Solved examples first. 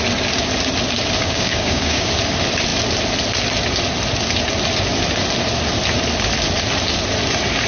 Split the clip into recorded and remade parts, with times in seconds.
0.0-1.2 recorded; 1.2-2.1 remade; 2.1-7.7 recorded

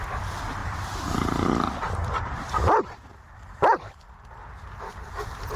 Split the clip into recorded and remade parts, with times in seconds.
0.0-0.6 recorded; 0.6-4.0 remade; 4.0-5.6 recorded

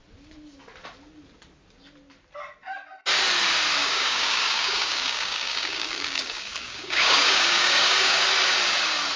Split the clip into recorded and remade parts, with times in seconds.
0.0-3.8 recorded; 3.8-8.2 remade; 8.2-9.2 recorded

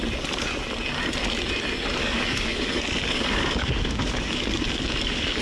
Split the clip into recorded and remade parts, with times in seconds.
0.0-2.0 recorded; 2.0-5.4 remade

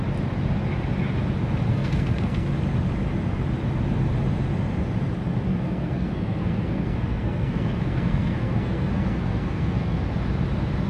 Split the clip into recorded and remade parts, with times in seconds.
0.0-1.7 recorded; 1.7-2.5 remade; 2.5-5.5 recorded; 5.5-10.0 remade; 10.0-10.9 recorded

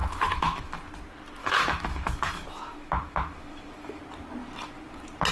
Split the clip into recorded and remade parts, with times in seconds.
0.0-0.8 remade; 0.8-1.4 recorded; 1.4-4.0 remade; 4.0-5.3 recorded